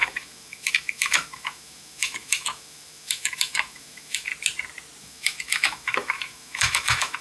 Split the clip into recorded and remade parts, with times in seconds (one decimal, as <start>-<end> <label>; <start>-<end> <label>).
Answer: 0.0-4.3 remade; 4.3-5.0 recorded; 5.0-7.2 remade